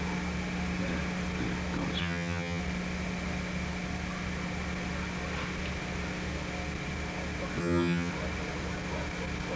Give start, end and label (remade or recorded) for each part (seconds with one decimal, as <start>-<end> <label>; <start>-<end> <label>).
0.0-2.0 recorded; 2.0-2.6 remade; 2.6-7.6 recorded; 7.6-8.1 remade; 8.1-9.6 recorded